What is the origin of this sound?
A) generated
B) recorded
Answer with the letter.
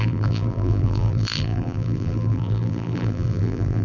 A